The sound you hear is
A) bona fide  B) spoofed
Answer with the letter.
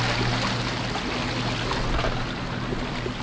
A